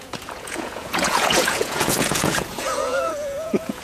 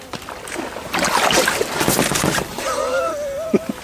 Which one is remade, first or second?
first